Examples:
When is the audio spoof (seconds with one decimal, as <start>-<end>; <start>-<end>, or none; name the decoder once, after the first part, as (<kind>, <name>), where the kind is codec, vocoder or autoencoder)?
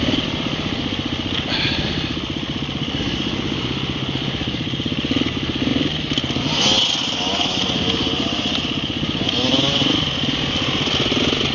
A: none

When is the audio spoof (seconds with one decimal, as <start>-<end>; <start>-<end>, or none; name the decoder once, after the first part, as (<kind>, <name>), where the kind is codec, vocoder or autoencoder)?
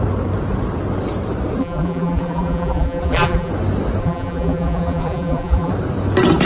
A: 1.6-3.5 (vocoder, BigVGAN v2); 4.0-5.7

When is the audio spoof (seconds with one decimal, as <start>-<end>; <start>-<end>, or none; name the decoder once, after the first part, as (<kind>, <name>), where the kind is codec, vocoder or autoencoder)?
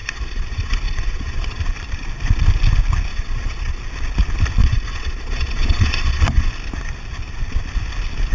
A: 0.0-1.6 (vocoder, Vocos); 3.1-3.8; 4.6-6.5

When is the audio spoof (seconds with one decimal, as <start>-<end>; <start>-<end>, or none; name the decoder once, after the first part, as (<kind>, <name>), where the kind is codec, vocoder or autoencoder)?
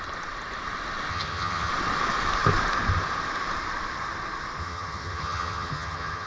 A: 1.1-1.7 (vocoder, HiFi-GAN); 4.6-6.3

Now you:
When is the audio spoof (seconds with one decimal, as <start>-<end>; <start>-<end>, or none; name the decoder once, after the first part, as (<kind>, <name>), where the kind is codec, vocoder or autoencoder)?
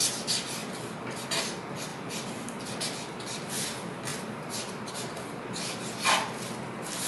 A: 0.0-7.1 (vocoder, BigVGAN v2)